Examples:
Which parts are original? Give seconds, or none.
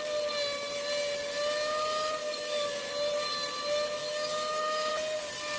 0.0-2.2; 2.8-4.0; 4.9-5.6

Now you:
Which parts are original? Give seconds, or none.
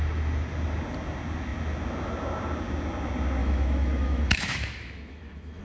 0.0-3.4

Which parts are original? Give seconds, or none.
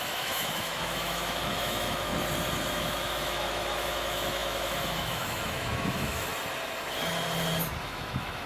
2.1-2.7; 6.3-7.8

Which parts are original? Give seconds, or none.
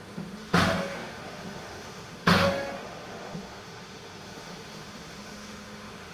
none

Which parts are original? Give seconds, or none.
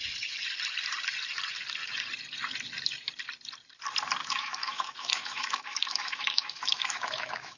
0.0-4.2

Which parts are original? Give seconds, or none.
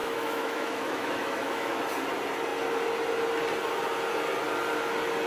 1.8-5.3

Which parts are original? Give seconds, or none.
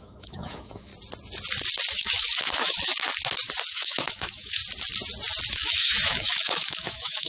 0.9-1.9; 2.9-3.7; 4.6-5.5